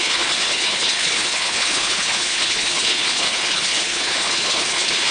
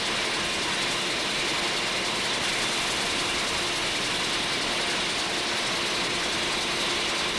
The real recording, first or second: second